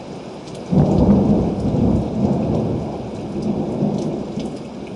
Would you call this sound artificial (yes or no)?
no